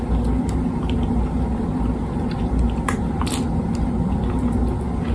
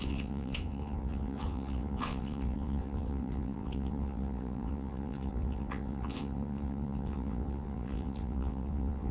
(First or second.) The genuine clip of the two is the first